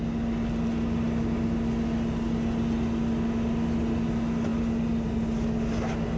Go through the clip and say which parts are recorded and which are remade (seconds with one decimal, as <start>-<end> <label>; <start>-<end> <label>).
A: 0.0-6.2 recorded